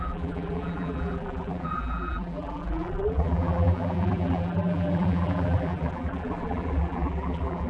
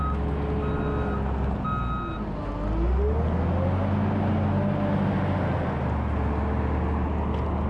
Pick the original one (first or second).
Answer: second